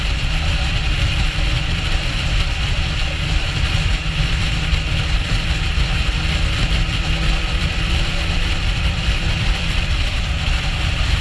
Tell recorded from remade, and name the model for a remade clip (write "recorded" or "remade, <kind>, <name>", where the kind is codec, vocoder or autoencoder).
remade, vocoder, BigVGAN v2